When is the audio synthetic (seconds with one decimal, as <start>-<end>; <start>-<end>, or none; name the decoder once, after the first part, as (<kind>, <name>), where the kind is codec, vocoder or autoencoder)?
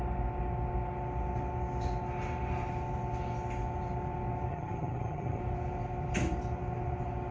4.5-5.4 (vocoder, HiFi-GAN)